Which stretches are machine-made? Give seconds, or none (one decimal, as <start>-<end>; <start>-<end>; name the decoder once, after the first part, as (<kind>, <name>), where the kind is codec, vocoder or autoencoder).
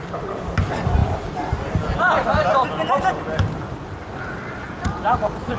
none